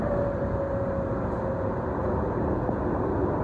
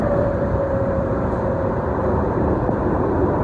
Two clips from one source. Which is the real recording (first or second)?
first